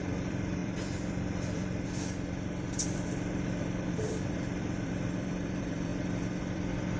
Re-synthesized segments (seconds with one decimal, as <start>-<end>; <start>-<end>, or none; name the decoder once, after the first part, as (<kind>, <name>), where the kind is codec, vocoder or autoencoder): 0.0-5.9 (vocoder, BigVGAN v2); 6.4-7.0